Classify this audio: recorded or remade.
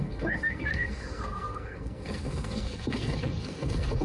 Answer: remade